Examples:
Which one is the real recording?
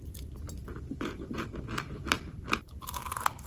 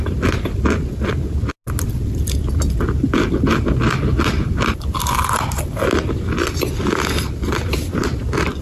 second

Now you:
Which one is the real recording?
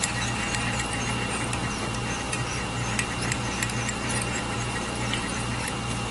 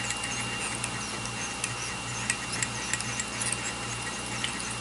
second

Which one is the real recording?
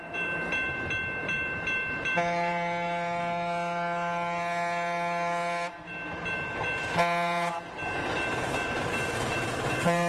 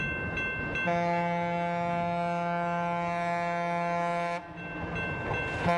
second